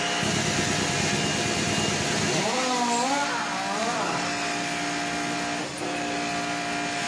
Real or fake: real